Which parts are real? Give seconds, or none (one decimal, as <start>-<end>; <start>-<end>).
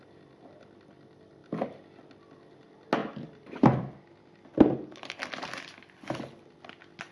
0.0-7.1